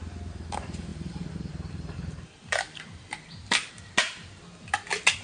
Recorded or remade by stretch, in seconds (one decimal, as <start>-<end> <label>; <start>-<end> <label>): 0.0-0.9 recorded; 0.9-3.7 remade; 3.7-5.2 recorded